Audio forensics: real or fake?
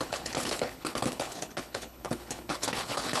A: fake